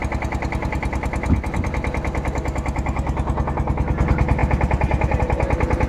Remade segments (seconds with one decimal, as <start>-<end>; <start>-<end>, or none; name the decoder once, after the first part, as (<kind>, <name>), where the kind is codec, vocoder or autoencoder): none